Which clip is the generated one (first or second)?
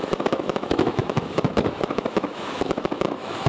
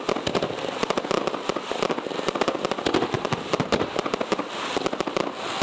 first